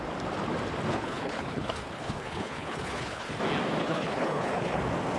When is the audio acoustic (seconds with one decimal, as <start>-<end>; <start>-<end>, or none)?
0.0-0.9; 3.3-3.8; 4.8-5.2